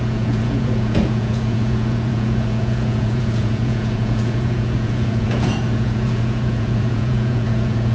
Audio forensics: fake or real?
fake